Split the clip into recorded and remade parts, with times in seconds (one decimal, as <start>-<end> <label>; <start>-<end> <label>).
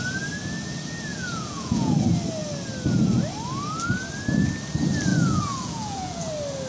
0.0-1.1 recorded; 1.1-1.9 remade; 1.9-5.1 recorded; 5.1-6.3 remade; 6.3-6.7 recorded